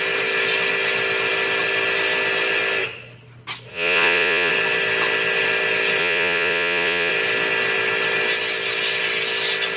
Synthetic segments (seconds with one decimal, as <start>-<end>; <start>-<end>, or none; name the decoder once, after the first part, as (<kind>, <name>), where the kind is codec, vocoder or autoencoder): 3.7-4.5 (vocoder, Vocos); 6.0-7.1